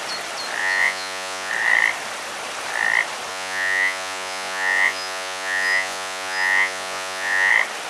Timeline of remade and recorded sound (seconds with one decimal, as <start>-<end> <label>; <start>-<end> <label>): 0.0-0.6 recorded; 0.6-1.5 remade; 1.5-3.3 recorded; 3.3-7.5 remade; 7.5-7.9 recorded